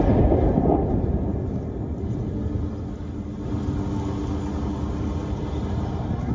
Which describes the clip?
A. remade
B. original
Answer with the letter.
B